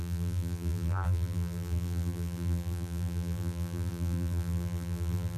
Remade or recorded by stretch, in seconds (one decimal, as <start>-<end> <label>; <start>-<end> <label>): 0.0-5.4 remade